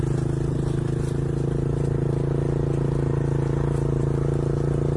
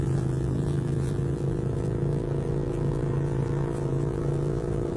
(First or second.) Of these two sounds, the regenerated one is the second